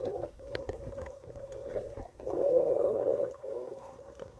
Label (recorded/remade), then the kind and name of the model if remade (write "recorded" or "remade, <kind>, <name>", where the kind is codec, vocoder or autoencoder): remade, codec, SNAC